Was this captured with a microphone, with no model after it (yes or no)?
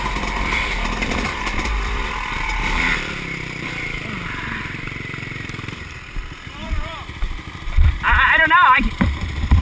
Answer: no